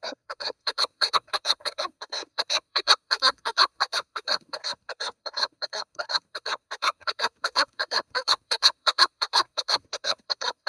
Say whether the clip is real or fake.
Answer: fake